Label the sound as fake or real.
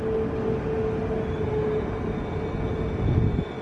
real